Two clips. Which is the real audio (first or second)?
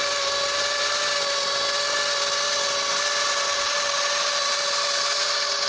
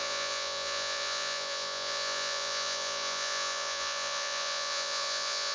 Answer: first